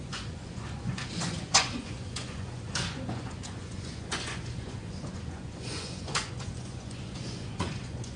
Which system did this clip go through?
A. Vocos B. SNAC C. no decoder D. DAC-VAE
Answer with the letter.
A